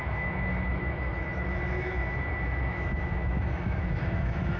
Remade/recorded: remade